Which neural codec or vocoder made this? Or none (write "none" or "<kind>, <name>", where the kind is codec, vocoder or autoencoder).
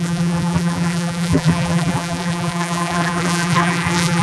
vocoder, BigVGAN v2